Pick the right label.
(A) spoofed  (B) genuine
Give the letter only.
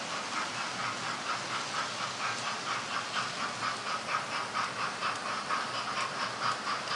B